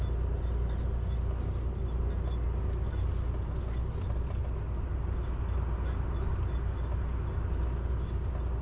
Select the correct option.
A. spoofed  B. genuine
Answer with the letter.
B